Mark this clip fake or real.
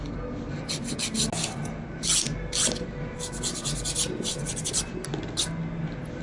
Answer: real